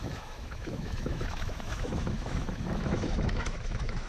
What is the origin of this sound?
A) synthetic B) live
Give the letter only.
A